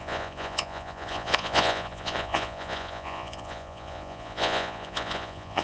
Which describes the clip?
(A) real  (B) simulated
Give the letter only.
B